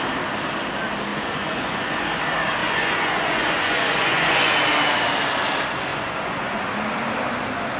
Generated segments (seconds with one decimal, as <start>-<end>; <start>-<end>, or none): 1.1-2.2; 2.6-4.5; 5.9-6.6